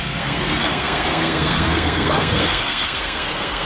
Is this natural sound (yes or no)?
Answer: no